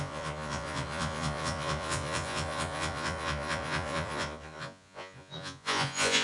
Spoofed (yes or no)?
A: yes